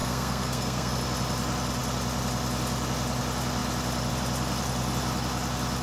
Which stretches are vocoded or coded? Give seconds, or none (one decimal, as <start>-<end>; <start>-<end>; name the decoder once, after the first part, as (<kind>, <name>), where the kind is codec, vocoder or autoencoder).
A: 0.0-0.9 (codec, SNAC)